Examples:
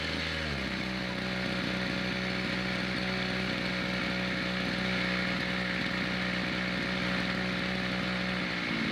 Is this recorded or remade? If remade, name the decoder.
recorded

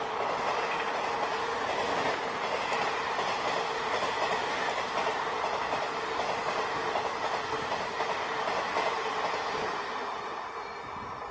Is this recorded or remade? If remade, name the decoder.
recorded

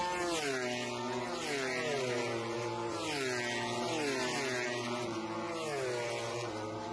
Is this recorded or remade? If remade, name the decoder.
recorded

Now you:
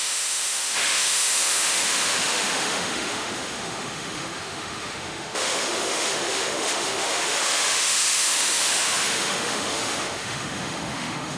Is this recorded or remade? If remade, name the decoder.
remade, autoencoder, DAC-VAE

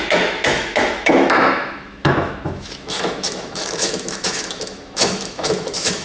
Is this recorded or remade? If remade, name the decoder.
remade, autoencoder, DAC-VAE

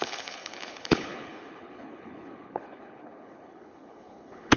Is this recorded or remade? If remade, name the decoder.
remade, codec, HILCodec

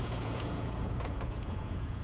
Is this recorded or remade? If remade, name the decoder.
remade, vocoder, Vocos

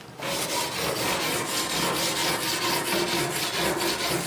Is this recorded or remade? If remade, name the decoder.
recorded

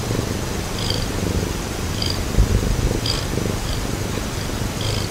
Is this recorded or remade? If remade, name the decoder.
recorded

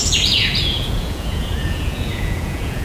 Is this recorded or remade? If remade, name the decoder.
remade, vocoder, Vocos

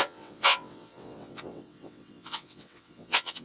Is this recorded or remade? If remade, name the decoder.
remade, vocoder, WaveNeXt